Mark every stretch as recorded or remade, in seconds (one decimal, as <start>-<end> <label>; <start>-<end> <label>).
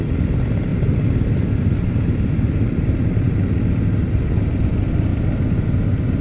0.0-0.7 recorded; 0.7-3.4 remade; 3.4-6.2 recorded